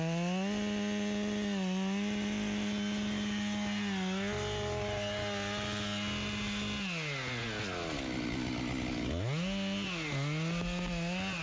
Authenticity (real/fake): real